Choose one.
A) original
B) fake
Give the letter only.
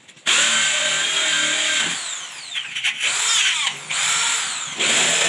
A